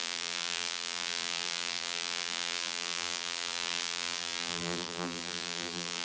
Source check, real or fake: fake